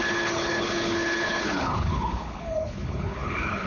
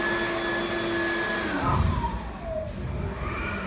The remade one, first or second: first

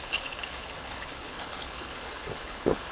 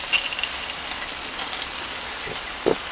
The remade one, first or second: first